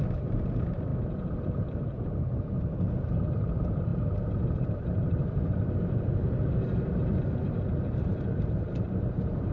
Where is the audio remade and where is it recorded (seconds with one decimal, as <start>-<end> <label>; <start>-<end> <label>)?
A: 0.0-0.9 remade; 0.9-1.7 recorded; 1.7-9.5 remade